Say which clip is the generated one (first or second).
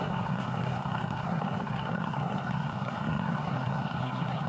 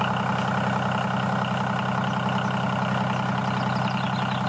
first